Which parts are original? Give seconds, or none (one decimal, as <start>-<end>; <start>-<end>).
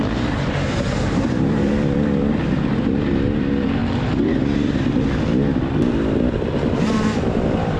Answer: 3.8-6.7